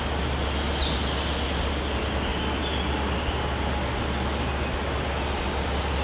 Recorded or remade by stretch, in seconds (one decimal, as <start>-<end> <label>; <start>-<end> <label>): 0.0-6.0 recorded